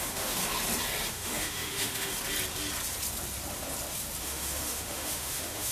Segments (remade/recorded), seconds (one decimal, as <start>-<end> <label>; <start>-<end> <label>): 0.0-0.4 remade; 0.4-1.1 recorded; 1.1-2.1 remade; 2.1-4.2 recorded; 4.2-5.7 remade